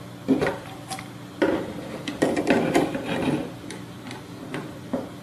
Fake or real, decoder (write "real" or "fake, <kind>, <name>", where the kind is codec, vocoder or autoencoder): real